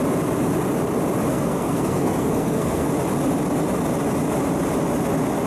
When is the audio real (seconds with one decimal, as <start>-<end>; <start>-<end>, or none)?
0.0-1.3; 2.9-5.5